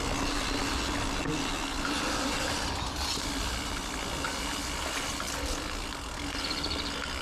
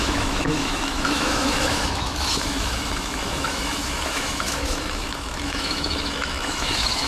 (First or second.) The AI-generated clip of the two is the second